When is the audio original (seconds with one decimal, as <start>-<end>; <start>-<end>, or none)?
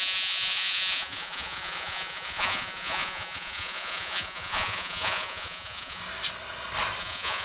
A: 6.0-7.0